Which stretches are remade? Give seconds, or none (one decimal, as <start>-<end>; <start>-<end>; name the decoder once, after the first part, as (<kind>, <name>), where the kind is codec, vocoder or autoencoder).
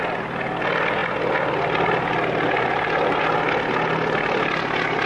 none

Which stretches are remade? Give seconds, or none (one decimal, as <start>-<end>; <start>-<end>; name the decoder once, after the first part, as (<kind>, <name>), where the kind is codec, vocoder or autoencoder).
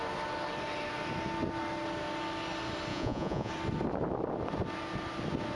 2.9-3.5 (vocoder, Vocos)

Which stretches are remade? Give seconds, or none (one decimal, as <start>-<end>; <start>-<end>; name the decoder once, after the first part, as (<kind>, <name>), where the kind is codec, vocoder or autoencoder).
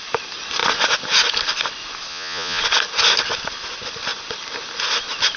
2.1-2.6 (vocoder, Vocos)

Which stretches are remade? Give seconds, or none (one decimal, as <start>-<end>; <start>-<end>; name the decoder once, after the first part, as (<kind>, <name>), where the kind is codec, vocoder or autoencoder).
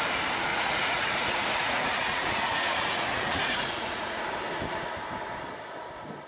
0.5-4.2 (vocoder, Vocos)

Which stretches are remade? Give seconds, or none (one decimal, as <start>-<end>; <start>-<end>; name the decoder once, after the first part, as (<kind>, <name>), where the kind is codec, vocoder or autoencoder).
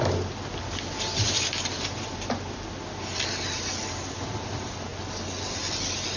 none